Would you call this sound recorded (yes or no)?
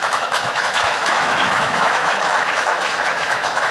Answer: no